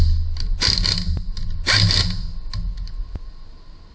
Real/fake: real